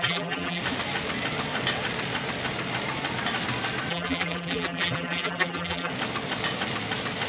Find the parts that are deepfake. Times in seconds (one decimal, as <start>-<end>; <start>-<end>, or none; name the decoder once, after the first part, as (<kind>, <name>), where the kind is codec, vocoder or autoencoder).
0.0-0.6 (vocoder, BigVGAN v2); 3.9-5.9